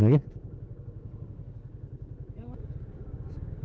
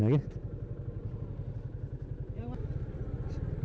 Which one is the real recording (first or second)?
second